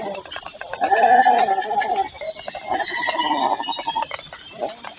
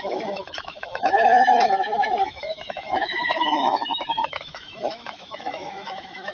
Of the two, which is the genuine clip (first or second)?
first